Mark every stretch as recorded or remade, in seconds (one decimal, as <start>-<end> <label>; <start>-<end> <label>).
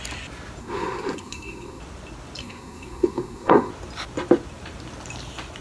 0.0-0.6 recorded; 0.6-1.8 remade; 1.8-2.4 recorded; 2.4-3.7 remade; 3.7-5.6 recorded